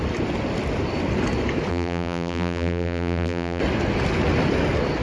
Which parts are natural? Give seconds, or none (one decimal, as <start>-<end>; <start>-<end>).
0.0-1.7; 3.6-5.0